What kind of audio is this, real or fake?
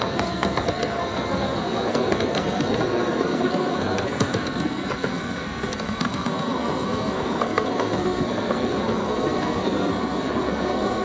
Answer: fake